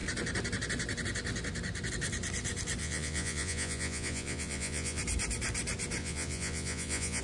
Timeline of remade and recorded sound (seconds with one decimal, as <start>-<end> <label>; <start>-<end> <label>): 0.0-2.8 recorded; 2.8-5.0 remade; 5.0-6.0 recorded; 6.0-7.2 remade